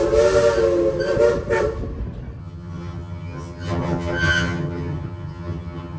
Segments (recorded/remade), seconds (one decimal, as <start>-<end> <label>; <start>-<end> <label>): 0.0-2.4 recorded; 2.4-6.0 remade